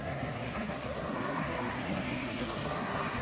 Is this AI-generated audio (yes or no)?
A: yes